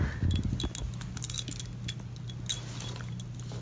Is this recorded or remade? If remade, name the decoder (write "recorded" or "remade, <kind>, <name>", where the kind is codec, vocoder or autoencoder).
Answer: recorded